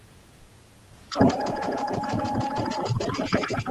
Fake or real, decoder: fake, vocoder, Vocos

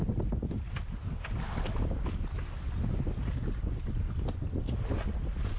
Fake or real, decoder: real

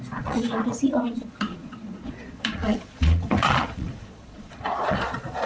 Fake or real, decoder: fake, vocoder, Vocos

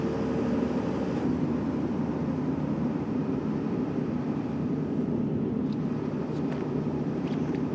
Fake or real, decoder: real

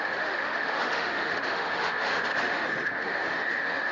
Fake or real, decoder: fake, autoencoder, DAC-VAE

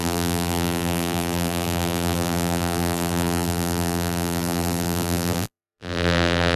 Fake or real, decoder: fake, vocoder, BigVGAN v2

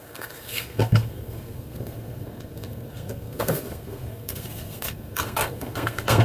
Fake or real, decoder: fake, codec, SNAC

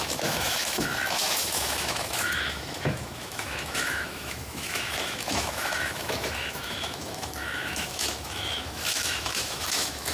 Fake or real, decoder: fake, autoencoder, DAC-VAE